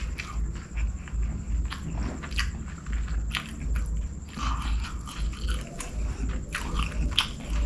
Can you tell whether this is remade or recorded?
recorded